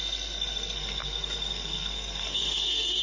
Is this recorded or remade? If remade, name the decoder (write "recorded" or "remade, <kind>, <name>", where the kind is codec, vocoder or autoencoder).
remade, codec, SNAC